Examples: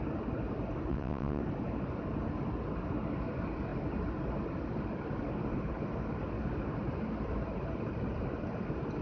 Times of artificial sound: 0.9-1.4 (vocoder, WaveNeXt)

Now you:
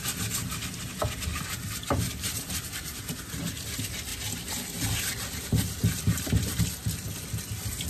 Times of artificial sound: 1.3-3.0 (vocoder, BigVGAN v2); 4.1-6.6

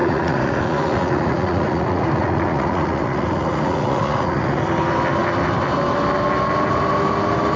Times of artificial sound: 0.0-4.6 (vocoder, Vocos)